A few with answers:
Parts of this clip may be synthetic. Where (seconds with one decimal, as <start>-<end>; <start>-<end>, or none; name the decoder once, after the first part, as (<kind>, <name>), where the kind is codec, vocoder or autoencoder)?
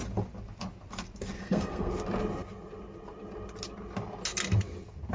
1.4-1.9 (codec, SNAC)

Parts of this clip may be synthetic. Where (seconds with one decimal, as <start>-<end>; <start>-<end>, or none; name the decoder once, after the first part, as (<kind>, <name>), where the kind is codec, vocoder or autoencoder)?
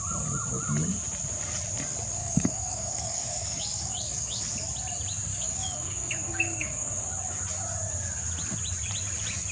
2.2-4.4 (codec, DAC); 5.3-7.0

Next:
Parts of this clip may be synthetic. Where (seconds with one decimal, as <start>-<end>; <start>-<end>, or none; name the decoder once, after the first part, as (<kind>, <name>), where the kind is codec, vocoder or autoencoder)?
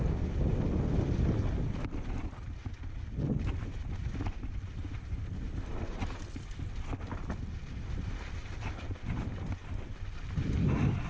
8.4-10.2 (vocoder, BigVGAN v2)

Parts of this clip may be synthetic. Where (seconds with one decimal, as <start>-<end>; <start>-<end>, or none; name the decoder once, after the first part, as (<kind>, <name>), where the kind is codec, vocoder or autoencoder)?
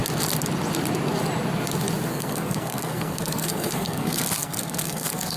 2.1-5.4 (codec, SNAC)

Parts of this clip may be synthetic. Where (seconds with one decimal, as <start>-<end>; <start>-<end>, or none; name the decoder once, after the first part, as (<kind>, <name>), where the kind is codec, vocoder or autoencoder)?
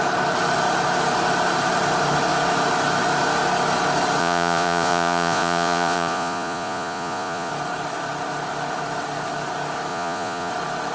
4.2-7.5 (vocoder, Vocos); 9.9-10.5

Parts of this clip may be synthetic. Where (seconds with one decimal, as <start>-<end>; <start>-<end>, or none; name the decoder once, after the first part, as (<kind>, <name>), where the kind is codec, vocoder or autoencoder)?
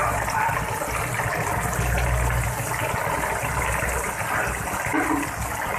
none